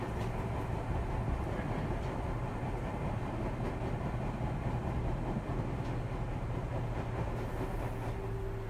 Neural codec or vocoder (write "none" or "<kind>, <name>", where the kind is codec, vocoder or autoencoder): none